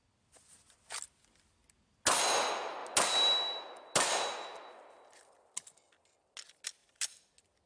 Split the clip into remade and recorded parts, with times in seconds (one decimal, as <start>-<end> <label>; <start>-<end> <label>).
0.0-7.7 recorded